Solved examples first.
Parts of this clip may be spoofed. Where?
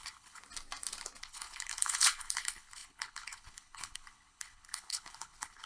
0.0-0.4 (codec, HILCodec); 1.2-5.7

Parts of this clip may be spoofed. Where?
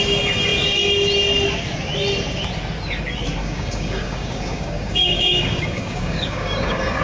3.4-7.0 (codec, DAC)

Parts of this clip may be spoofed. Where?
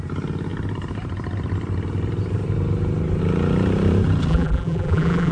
4.3-5.3 (vocoder, BigVGAN v2)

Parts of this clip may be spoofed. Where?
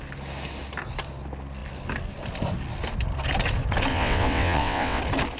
3.9-5.0 (vocoder, WaveNeXt)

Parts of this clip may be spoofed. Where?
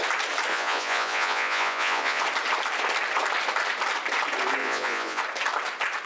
0.5-2.2 (vocoder, Vocos); 4.6-5.2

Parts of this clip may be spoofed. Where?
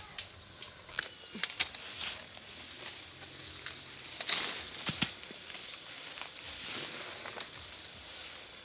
none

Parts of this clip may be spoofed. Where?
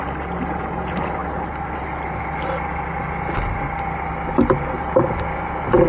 none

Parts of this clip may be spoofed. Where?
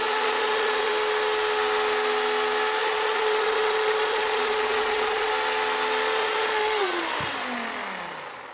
0.0-0.9 (vocoder, Vocos); 2.8-5.3; 6.2-7.0